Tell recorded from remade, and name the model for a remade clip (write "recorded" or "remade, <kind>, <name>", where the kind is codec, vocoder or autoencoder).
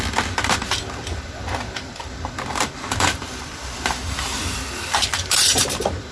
remade, vocoder, BigVGAN v2